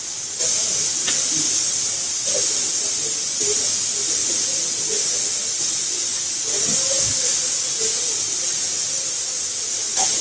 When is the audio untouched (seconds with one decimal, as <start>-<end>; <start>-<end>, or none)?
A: 0.0-10.2